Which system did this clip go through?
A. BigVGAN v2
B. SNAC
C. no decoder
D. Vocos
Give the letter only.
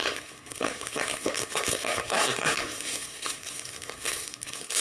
B